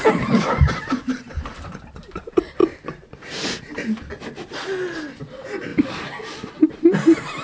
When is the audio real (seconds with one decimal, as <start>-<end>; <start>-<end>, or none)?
2.6-5.2; 5.7-6.7